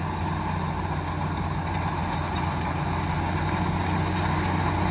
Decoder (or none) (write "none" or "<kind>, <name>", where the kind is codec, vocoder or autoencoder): none